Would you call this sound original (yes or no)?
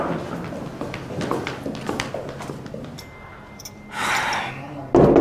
yes